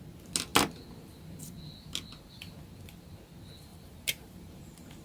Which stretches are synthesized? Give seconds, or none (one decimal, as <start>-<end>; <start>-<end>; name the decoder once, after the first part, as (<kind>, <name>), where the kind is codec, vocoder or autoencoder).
3.7-5.0 (vocoder, BigVGAN v2)